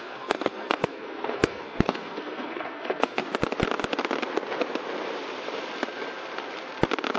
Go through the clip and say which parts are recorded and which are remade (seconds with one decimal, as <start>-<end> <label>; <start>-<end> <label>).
0.0-3.2 remade; 3.2-7.2 recorded

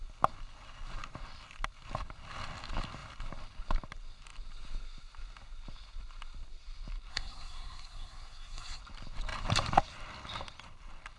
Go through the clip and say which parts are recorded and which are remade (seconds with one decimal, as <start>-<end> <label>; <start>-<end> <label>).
0.0-7.1 recorded; 7.1-8.8 remade; 8.8-11.2 recorded

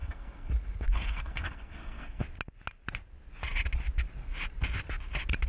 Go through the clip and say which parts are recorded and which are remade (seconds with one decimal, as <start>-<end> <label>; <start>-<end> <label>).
0.0-0.5 remade; 0.5-0.9 recorded; 0.9-2.2 remade; 2.2-5.5 recorded

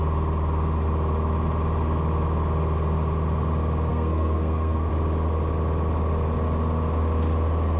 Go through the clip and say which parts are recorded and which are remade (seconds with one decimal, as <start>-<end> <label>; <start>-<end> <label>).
0.0-3.9 recorded; 3.9-4.9 remade; 4.9-7.8 recorded

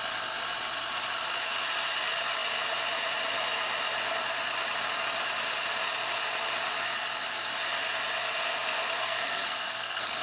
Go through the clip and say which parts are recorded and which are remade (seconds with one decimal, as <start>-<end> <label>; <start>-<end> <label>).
0.0-9.0 recorded; 9.0-10.2 remade